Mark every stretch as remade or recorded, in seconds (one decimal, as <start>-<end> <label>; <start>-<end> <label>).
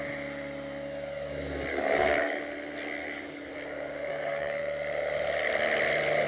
0.0-1.7 recorded; 1.7-2.4 remade; 2.4-3.0 recorded; 3.0-3.5 remade; 3.5-4.1 recorded; 4.1-4.6 remade; 4.6-6.3 recorded